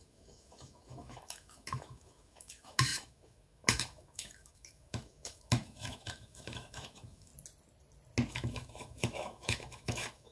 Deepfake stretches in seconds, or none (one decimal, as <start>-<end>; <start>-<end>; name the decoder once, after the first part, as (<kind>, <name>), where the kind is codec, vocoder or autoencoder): 0.0-7.3 (autoencoder, DAC-VAE); 8.3-10.3